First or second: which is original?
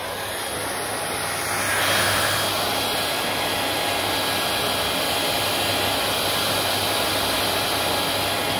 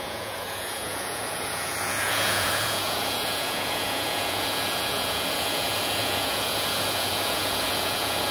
first